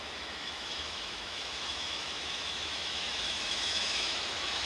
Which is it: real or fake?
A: fake